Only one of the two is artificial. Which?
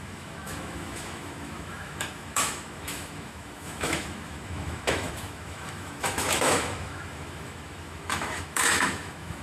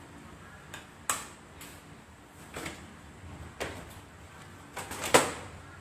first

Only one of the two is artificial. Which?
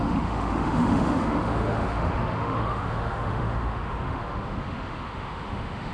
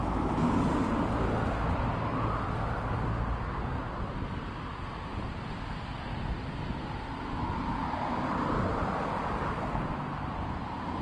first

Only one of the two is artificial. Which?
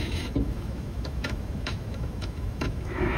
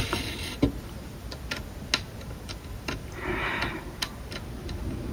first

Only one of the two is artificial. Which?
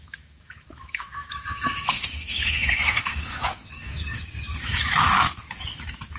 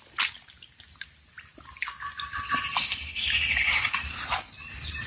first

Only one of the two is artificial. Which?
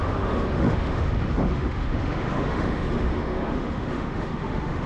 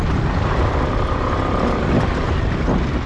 first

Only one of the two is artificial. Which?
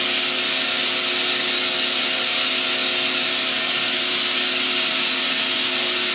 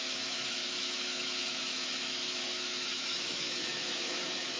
second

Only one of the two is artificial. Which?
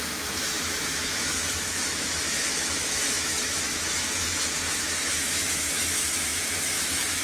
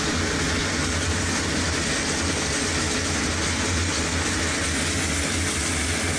first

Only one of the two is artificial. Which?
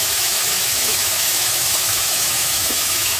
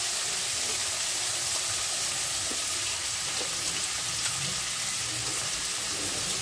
first